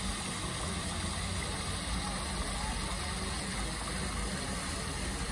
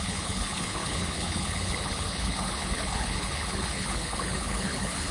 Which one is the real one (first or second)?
first